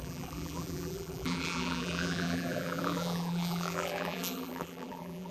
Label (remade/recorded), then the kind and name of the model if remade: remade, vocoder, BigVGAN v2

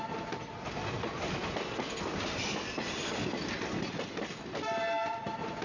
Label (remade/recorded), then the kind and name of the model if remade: recorded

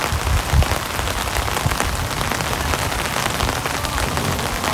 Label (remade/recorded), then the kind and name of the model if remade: recorded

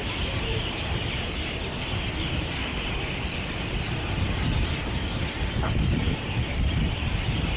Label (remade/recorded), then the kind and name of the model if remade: remade, vocoder, BigVGAN v2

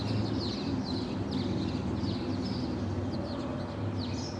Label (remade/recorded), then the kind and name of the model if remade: recorded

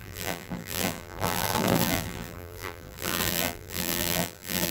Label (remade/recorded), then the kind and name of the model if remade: remade, vocoder, BigVGAN v2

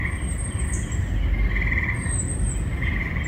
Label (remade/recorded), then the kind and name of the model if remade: recorded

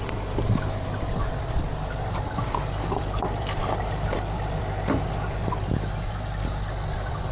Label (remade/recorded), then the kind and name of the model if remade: remade, vocoder, BigVGAN v2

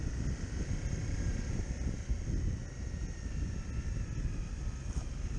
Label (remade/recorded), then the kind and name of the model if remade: recorded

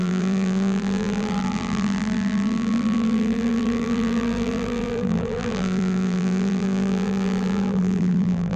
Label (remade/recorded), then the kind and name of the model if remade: remade, vocoder, BigVGAN v2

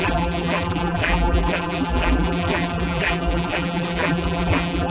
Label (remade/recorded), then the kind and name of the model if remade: remade, vocoder, BigVGAN v2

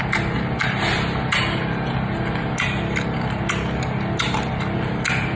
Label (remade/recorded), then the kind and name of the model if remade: recorded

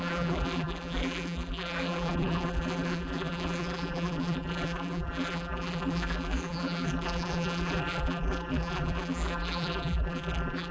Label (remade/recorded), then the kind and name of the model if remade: remade, vocoder, BigVGAN v2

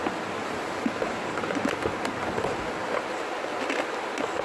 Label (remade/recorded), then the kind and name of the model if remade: recorded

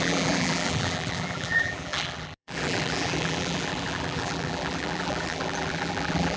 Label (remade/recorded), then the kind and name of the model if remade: remade, vocoder, BigVGAN v2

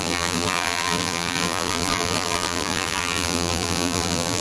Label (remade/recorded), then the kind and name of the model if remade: remade, vocoder, BigVGAN v2